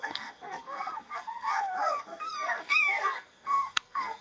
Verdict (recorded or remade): remade